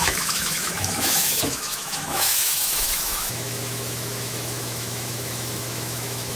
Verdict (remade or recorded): remade